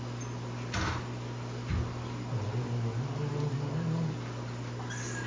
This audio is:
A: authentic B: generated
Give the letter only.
A